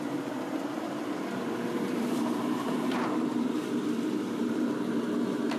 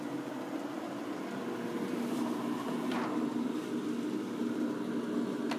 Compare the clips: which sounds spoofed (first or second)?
first